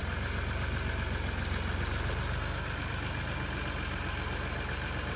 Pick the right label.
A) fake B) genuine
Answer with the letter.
B